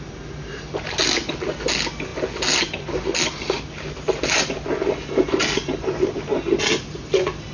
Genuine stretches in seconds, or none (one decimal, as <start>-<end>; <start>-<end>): 0.0-7.5